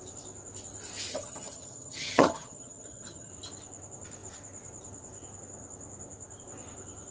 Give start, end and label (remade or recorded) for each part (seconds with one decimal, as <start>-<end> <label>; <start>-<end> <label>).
0.0-1.1 recorded; 1.1-3.3 remade; 3.3-7.1 recorded